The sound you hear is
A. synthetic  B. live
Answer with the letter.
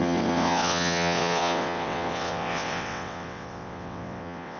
A